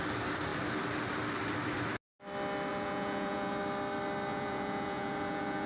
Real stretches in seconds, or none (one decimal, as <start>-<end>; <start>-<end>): 0.0-2.7; 3.6-4.3